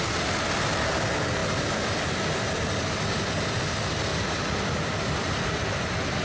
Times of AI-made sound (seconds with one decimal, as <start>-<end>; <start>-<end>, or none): 1.4-2.1; 4.1-6.2